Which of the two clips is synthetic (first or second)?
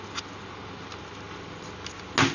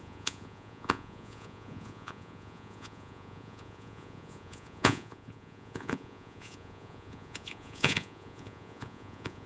second